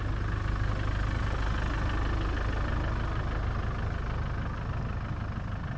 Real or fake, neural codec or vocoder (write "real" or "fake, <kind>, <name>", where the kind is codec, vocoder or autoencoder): real